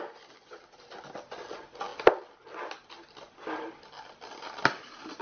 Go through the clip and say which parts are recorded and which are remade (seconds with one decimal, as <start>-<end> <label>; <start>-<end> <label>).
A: 0.0-5.2 recorded